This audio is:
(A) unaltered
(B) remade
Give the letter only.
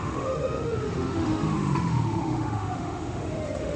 B